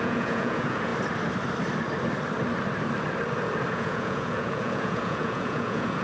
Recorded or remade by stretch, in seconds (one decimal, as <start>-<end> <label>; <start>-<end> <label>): 0.0-0.9 remade; 0.9-3.7 recorded; 3.7-6.0 remade